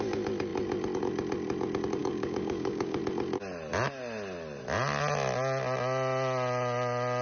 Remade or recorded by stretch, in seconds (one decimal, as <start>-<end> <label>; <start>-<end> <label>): 0.0-2.0 recorded; 2.0-3.0 remade; 3.0-7.2 recorded